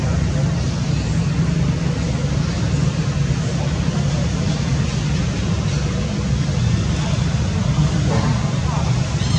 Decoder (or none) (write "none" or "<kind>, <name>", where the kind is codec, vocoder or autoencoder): none